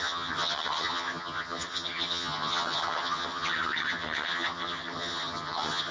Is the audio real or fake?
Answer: fake